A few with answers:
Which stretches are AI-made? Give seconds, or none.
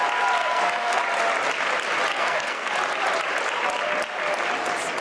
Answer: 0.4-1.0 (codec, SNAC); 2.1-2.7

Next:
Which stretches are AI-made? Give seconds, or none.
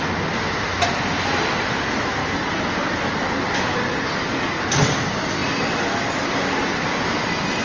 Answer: none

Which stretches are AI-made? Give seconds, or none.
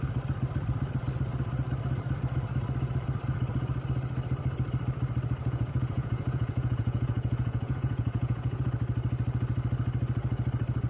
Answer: 5.4-8.6 (vocoder, Vocos)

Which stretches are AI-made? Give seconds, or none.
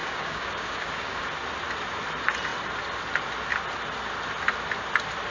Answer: 0.0-1.2 (codec, DAC)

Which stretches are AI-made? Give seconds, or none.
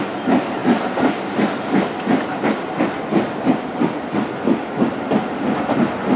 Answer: none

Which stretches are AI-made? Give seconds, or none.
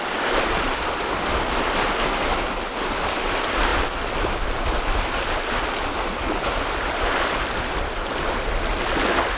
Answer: none